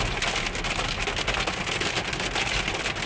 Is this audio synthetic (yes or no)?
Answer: no